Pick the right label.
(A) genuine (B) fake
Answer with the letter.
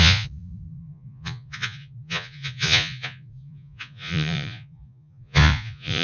B